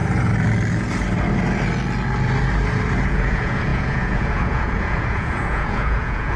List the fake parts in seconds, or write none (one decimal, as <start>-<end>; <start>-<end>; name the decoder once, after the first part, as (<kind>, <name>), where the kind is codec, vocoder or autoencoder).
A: 3.1-6.4 (vocoder, Vocos)